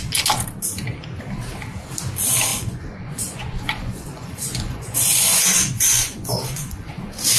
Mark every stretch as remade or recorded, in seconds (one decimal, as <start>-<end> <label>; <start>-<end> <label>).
0.0-2.5 recorded; 2.5-6.9 remade; 6.9-7.4 recorded